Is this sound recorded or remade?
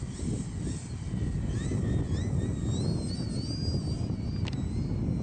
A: recorded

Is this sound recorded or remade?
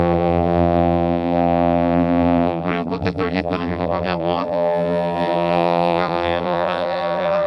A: remade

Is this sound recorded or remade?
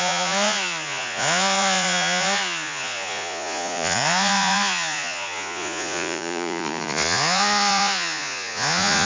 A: remade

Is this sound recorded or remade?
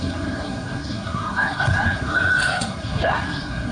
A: remade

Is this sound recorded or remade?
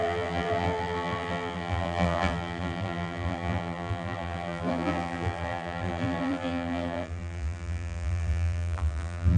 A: remade